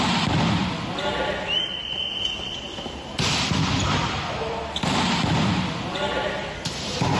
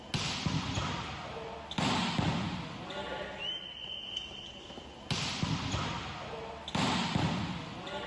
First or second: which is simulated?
first